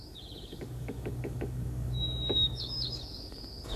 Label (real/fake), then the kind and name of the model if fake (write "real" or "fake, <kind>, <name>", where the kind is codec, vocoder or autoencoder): fake, codec, DAC